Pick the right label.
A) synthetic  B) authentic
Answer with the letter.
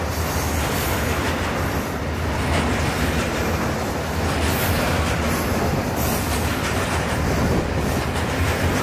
B